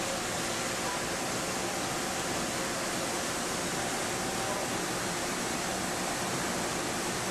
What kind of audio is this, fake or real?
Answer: real